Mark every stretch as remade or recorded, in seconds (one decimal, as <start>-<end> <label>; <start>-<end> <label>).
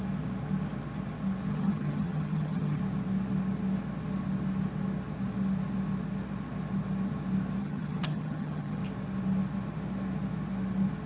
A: 0.0-1.5 recorded; 1.5-2.8 remade; 2.8-7.6 recorded; 7.6-8.8 remade; 8.8-11.1 recorded